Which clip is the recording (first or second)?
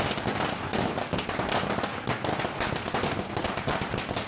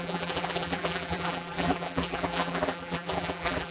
first